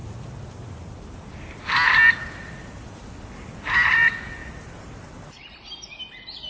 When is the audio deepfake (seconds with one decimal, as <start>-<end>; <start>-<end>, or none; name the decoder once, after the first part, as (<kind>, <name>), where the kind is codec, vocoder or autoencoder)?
none